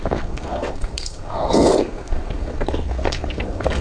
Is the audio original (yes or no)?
no